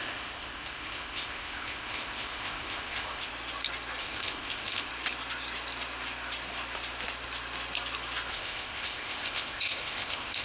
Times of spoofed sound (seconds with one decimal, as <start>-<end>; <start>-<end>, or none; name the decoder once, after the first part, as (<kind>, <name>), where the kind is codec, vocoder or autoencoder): 0.0-3.3 (codec, ZipCodec); 4.0-4.9; 8.3-10.4